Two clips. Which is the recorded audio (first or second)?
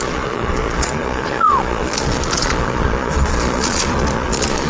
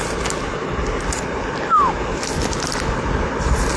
second